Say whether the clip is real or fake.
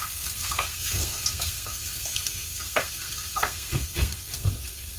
fake